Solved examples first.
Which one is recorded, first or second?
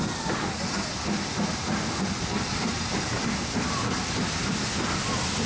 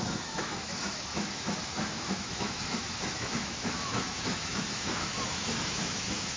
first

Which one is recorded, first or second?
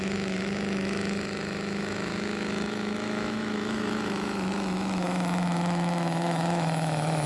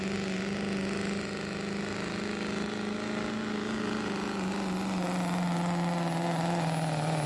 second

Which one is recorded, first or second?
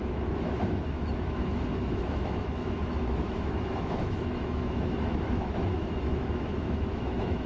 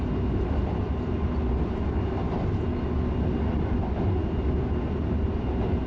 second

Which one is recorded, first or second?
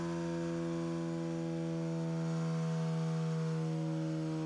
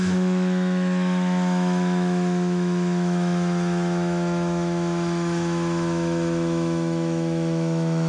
first